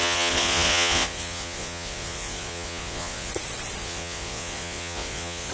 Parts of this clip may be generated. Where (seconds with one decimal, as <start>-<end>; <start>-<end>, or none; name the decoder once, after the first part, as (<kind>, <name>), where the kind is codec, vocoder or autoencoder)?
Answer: 0.0-3.3 (vocoder, Vocos); 3.8-5.5